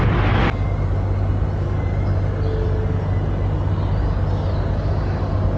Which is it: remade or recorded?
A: recorded